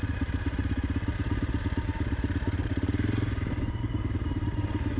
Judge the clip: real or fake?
real